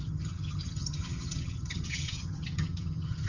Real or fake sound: fake